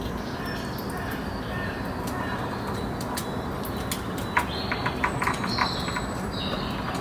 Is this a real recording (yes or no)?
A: yes